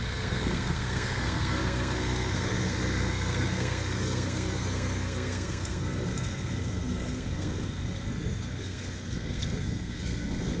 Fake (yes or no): yes